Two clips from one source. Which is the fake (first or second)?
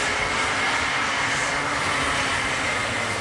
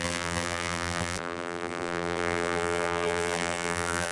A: second